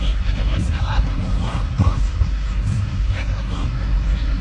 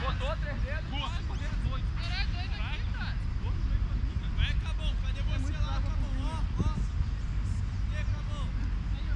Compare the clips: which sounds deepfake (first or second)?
first